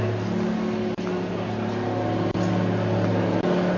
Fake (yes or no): no